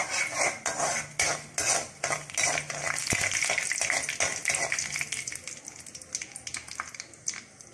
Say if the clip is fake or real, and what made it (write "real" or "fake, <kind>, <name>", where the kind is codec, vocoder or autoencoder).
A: real